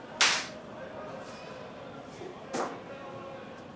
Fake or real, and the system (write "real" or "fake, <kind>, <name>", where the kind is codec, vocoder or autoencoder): real